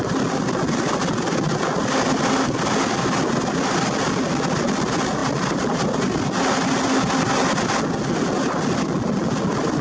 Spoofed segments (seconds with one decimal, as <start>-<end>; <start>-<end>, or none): none